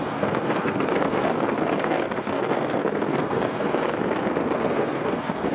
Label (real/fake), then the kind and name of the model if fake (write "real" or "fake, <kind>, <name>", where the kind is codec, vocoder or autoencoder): fake, codec, SNAC